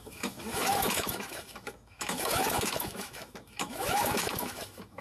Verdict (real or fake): fake